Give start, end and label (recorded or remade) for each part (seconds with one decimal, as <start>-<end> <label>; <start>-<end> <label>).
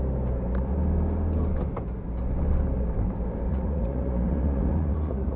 0.0-3.5 recorded; 3.5-5.4 remade